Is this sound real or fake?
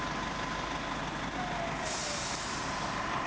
real